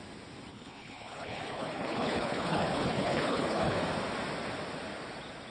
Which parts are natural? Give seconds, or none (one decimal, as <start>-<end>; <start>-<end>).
0.0-0.5; 3.8-5.5